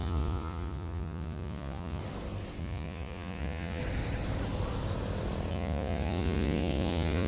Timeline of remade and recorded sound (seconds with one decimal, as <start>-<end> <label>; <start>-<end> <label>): 0.0-2.0 remade; 2.0-2.6 recorded; 2.6-3.8 remade; 3.8-5.5 recorded; 5.5-7.3 remade